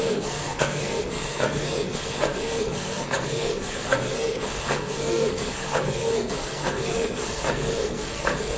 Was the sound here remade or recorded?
remade